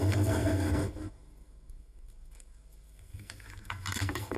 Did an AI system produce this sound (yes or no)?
yes